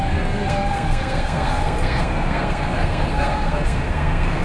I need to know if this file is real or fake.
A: fake